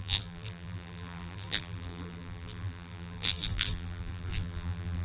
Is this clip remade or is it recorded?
remade